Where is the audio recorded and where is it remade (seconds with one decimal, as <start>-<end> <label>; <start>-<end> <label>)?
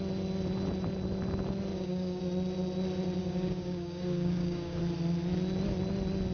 0.0-1.7 recorded; 1.7-2.2 remade; 2.2-3.2 recorded; 3.2-4.8 remade; 4.8-6.3 recorded